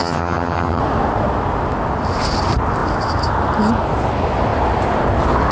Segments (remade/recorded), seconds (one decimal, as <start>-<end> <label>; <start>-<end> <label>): 0.0-0.8 remade; 0.8-5.5 recorded

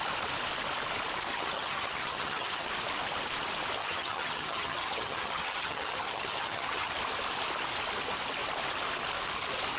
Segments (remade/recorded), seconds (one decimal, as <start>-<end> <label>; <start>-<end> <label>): 0.0-1.3 recorded; 1.3-2.7 remade; 2.7-3.8 recorded; 3.8-6.9 remade; 6.9-9.8 recorded

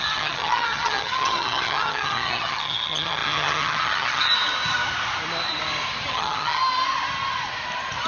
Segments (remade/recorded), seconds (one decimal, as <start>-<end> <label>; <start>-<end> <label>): 0.0-4.3 remade; 4.3-6.1 recorded; 6.1-6.6 remade; 6.6-8.1 recorded

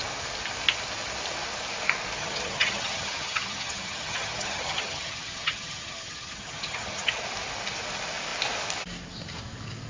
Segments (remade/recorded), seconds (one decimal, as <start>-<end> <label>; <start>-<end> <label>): 0.0-2.2 recorded; 2.2-7.2 remade; 7.2-9.9 recorded

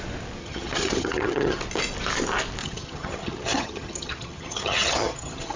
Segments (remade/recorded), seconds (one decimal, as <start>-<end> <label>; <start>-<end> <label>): 0.0-0.4 recorded; 0.4-1.6 remade; 1.6-2.6 recorded; 2.6-5.6 remade